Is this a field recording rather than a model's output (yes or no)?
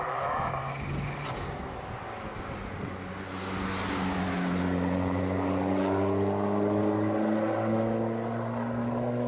yes